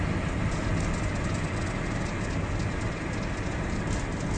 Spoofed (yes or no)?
no